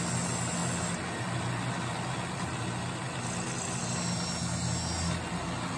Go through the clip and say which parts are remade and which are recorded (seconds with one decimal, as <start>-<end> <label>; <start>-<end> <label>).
0.0-5.8 recorded